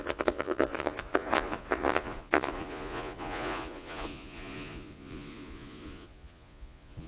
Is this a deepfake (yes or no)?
yes